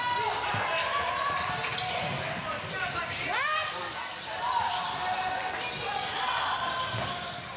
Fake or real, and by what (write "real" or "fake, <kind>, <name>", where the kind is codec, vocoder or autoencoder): real